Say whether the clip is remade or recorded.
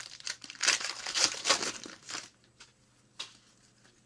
remade